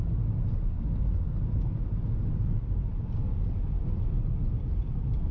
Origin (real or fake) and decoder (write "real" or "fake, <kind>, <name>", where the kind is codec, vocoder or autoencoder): real